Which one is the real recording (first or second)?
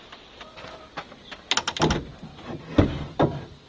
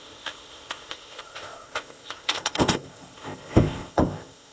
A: first